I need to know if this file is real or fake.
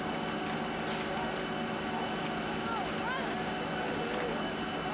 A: real